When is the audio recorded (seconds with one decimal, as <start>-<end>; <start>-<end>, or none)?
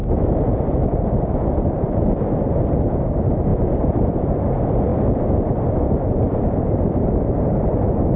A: 0.0-8.2